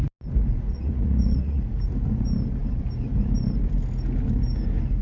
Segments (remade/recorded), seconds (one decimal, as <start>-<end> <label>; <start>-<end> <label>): 0.0-0.7 recorded; 0.7-1.6 remade; 1.6-5.0 recorded

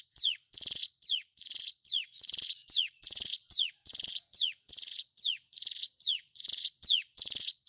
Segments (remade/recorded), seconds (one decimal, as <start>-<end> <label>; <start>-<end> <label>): 0.0-7.7 remade

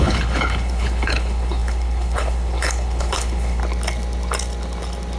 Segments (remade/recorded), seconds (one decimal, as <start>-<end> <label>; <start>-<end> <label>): 0.0-3.6 remade; 3.6-5.2 recorded

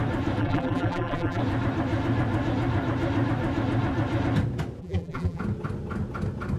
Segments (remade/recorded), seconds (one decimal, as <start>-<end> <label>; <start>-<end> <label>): 0.0-0.4 recorded; 0.4-1.4 remade; 1.4-4.8 recorded; 4.8-5.4 remade; 5.4-6.6 recorded

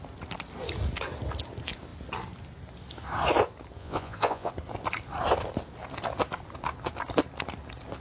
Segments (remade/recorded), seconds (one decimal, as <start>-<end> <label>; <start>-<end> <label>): 0.0-3.8 recorded; 3.8-4.5 remade; 4.5-8.0 recorded